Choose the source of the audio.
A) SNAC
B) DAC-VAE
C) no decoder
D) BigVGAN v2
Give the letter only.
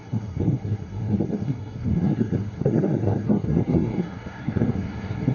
A